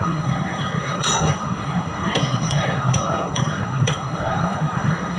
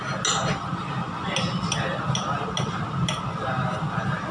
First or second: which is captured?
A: second